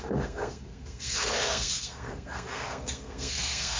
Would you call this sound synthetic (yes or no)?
yes